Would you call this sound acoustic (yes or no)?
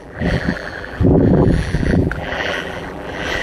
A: no